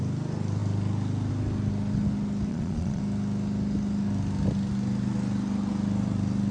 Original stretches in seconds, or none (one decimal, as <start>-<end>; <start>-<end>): 0.0-2.5; 3.0-6.5